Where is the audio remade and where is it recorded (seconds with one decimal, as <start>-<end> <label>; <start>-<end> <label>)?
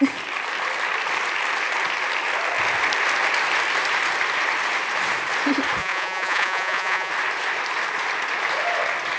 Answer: 0.0-5.8 recorded; 5.8-7.1 remade; 7.1-9.2 recorded